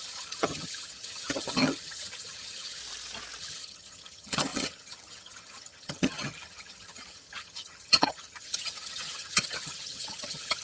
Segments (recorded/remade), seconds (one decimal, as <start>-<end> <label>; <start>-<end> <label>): 0.0-2.8 remade; 2.8-3.4 recorded; 3.4-10.6 remade